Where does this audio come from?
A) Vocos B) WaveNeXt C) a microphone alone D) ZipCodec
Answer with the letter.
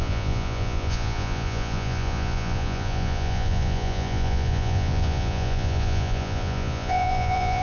A